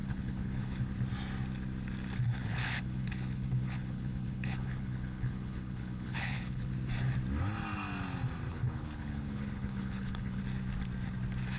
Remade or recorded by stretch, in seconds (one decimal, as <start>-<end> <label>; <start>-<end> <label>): 0.0-0.8 remade; 0.8-2.3 recorded; 2.3-6.7 remade; 6.7-8.5 recorded; 8.5-10.4 remade; 10.4-11.6 recorded